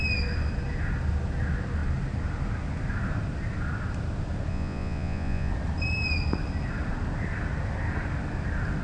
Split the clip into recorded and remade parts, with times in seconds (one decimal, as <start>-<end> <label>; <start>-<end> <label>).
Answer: 0.0-4.5 recorded; 4.5-5.5 remade; 5.5-8.8 recorded